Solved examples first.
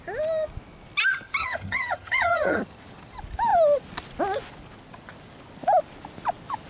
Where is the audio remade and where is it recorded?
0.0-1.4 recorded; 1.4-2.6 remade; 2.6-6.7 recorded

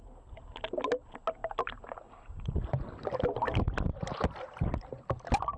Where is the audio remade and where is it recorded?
0.0-5.6 recorded

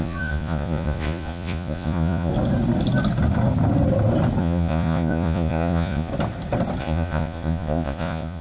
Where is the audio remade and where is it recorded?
0.0-2.3 remade; 2.3-4.4 recorded; 4.4-6.1 remade; 6.1-6.8 recorded; 6.8-8.4 remade

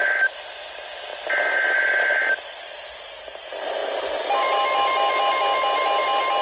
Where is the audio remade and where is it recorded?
0.0-6.4 recorded

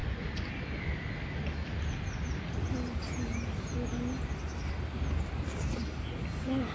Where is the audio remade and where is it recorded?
0.0-6.7 recorded

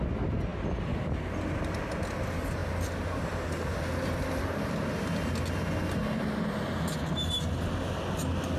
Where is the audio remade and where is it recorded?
0.0-8.6 recorded